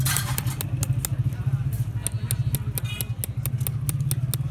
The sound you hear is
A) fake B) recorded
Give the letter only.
B